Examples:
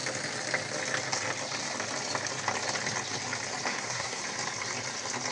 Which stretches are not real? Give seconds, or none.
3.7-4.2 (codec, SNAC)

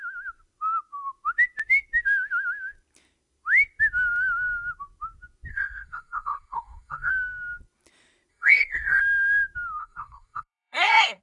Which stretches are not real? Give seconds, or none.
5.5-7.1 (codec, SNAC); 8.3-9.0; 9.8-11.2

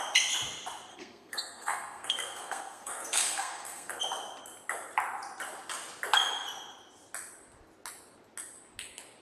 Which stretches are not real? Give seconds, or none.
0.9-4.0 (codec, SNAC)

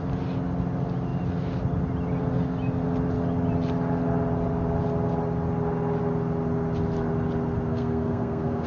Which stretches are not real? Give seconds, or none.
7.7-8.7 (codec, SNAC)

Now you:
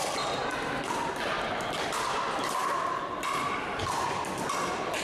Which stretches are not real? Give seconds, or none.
none

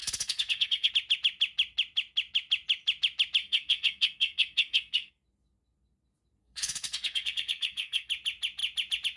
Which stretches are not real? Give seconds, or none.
0.0-0.9 (codec, SNAC); 3.4-5.1; 6.4-8.1

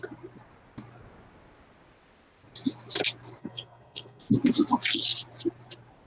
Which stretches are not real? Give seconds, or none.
3.4-4.2 (codec, SNAC)

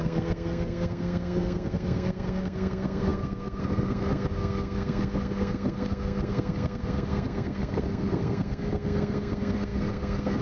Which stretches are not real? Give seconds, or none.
0.0-10.4 (codec, SNAC)